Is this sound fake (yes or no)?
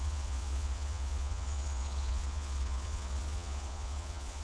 yes